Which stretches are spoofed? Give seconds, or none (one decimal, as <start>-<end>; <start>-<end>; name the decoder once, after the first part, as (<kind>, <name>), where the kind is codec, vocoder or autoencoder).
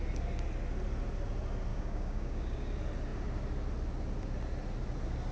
1.7-2.7 (codec, DAC)